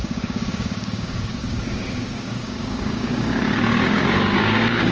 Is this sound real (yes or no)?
no